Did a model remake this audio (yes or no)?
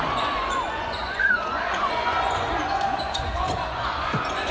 yes